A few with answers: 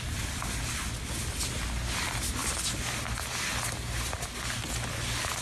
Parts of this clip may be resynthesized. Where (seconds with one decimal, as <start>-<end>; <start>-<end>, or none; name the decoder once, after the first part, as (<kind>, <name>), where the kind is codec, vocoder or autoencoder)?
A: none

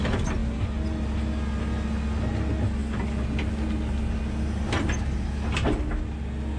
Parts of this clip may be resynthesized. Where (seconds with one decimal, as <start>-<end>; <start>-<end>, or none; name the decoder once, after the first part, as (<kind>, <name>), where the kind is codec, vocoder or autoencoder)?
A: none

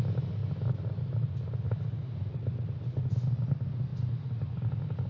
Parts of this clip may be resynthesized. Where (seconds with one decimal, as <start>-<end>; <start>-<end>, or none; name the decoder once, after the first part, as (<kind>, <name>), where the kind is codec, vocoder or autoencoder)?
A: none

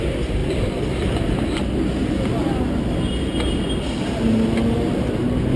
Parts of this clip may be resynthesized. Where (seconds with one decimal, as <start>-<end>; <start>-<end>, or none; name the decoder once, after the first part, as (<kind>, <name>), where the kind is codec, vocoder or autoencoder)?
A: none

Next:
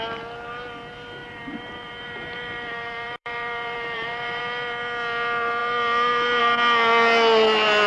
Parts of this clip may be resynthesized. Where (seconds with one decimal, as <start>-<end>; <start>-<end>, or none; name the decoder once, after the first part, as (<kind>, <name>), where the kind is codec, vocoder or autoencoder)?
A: 1.2-4.4 (vocoder, BigVGAN v2)

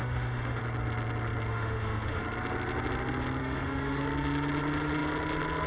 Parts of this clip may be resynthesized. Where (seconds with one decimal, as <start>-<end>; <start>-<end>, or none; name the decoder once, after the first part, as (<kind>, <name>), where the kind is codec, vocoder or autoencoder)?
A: 0.0-0.6 (autoencoder, DAC-VAE); 1.5-2.2; 3.4-4.0